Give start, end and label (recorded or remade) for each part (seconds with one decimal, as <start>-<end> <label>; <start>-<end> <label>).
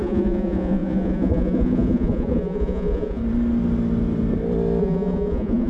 0.0-3.2 remade; 3.2-4.8 recorded; 4.8-5.7 remade